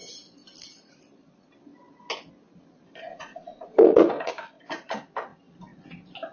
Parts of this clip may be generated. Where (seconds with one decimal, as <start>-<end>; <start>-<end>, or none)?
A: 3.1-4.3